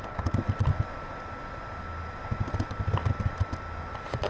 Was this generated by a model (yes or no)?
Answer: no